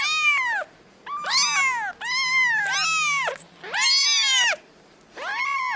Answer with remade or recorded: recorded